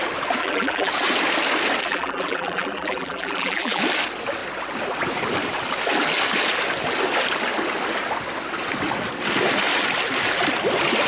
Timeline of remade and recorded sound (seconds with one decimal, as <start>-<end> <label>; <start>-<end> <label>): 0.0-0.4 recorded; 0.4-0.9 remade; 0.9-1.8 recorded; 1.8-3.8 remade; 3.8-11.1 recorded